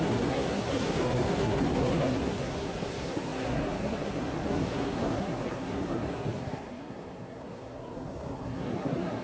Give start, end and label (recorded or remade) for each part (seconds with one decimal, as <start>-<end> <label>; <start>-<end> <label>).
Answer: 0.0-9.2 remade